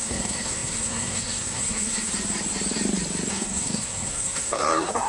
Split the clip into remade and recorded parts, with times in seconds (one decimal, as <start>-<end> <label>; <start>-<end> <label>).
0.0-2.1 remade; 2.1-3.3 recorded; 3.3-5.1 remade